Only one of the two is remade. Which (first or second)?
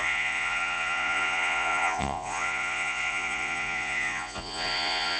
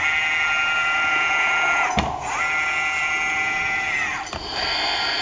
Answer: first